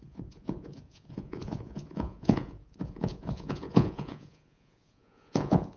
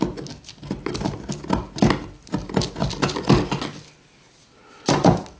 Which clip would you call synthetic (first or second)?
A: first